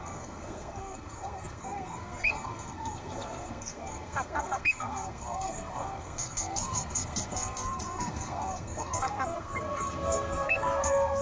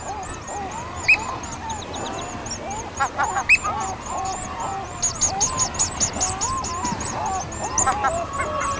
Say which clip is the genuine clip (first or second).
second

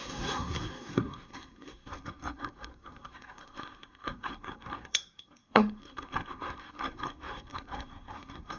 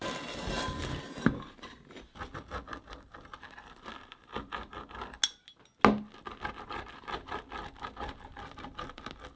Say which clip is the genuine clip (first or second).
second